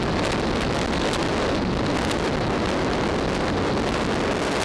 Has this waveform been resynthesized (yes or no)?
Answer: no